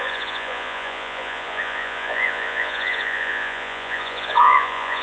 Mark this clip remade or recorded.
remade